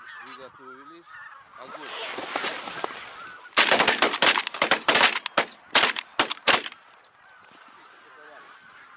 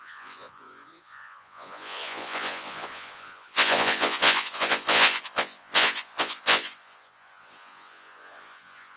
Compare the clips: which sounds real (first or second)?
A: first